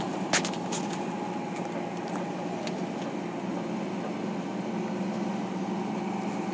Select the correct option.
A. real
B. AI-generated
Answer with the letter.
A